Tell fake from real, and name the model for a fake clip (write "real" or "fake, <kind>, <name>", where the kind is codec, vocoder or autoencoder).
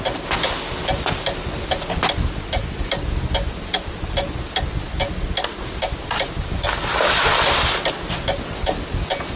real